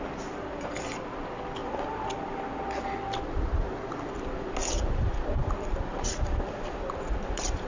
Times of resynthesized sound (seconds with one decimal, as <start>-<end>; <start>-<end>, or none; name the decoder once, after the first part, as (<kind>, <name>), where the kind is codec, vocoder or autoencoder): 1.6-2.4 (vocoder, BigVGAN v2); 5.4-7.1